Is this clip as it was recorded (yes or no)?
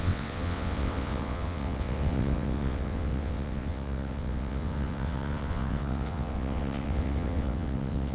no